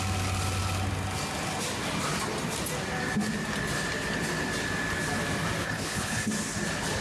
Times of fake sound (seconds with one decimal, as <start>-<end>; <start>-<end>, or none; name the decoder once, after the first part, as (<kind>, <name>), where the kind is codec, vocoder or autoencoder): 5.6-6.3 (codec, HILCodec)